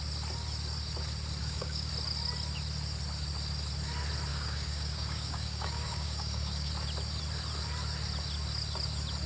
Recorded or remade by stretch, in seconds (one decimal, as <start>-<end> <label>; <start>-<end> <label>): 0.0-1.4 recorded; 1.4-1.9 remade; 1.9-4.3 recorded; 4.3-6.7 remade; 6.7-9.3 recorded